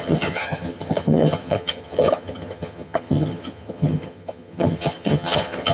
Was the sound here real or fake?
fake